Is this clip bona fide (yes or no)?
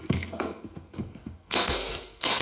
no